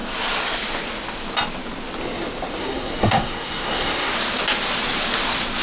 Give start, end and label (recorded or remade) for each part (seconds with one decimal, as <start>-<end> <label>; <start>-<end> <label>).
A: 0.0-2.6 recorded; 2.6-4.1 remade; 4.1-5.6 recorded